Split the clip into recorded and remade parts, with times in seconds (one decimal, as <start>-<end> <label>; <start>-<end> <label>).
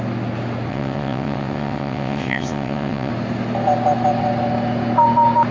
0.0-0.7 recorded; 0.7-3.1 remade; 3.1-5.5 recorded